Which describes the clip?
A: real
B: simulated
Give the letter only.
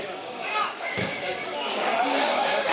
B